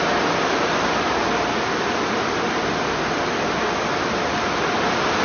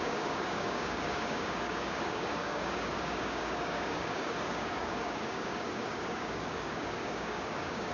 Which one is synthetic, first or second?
second